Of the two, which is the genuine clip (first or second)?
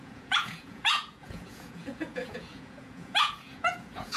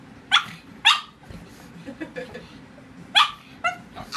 second